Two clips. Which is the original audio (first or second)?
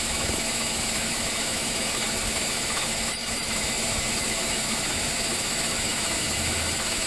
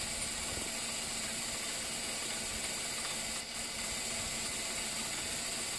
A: second